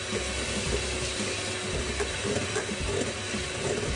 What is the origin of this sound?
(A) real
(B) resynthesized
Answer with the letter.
A